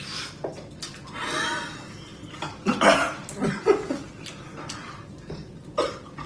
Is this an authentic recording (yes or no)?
yes